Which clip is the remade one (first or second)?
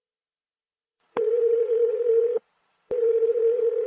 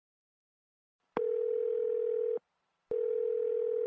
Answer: first